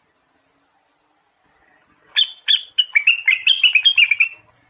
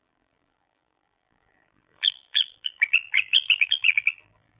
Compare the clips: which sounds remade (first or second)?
second